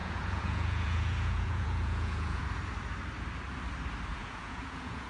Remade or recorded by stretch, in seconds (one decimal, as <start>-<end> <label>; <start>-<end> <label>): 0.0-2.4 remade; 2.4-4.1 recorded; 4.1-5.1 remade